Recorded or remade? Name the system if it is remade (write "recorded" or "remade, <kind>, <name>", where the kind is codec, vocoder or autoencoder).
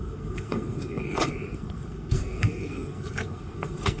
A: remade, codec, SNAC